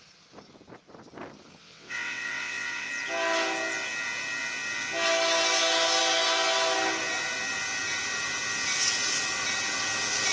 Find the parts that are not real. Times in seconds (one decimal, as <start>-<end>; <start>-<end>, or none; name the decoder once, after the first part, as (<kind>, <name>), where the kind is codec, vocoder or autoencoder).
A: 1.6-2.9 (vocoder, WaveNeXt)